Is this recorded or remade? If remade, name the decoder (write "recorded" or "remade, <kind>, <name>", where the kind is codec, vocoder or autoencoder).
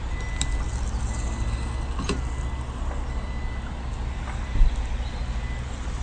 recorded